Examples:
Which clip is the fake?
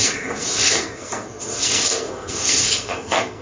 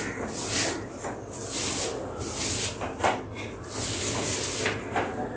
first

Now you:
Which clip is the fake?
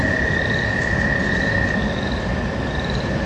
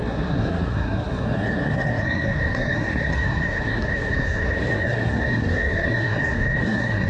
second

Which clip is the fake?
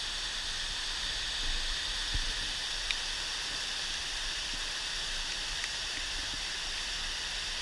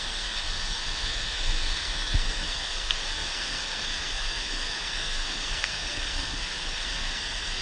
second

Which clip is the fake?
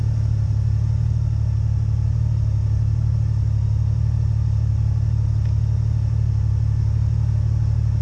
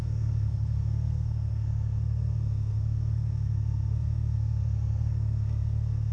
second